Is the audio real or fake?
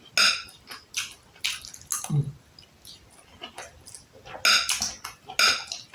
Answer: real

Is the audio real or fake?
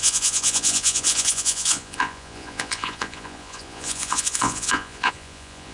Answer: fake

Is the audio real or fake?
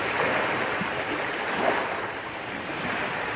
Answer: real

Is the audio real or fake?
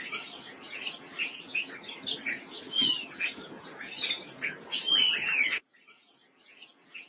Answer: fake